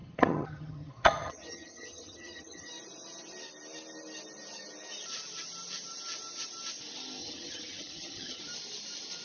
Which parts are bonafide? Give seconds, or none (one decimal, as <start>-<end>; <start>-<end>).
2.7-7.2; 8.4-9.2